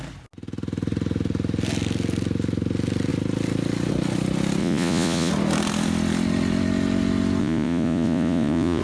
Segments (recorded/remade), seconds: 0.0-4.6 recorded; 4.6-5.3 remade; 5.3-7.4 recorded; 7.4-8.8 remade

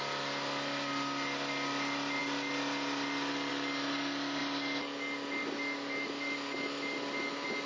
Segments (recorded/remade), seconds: 0.0-7.7 recorded

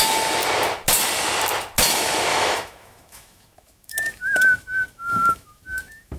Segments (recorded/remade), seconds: 0.0-2.3 recorded; 2.3-6.2 remade